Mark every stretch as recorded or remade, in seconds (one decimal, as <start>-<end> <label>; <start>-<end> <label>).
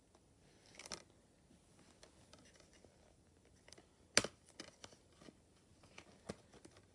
0.0-6.9 recorded